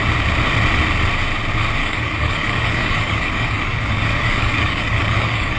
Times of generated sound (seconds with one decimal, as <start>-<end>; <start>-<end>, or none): 1.8-5.6